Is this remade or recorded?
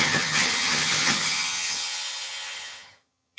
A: remade